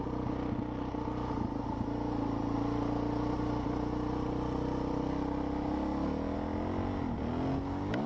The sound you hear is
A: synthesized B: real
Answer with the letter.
B